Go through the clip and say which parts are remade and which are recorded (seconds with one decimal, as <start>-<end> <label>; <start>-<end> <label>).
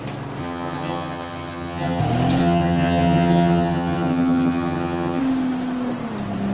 0.0-0.4 recorded; 0.4-2.0 remade; 2.0-2.4 recorded; 2.4-5.2 remade; 5.2-6.5 recorded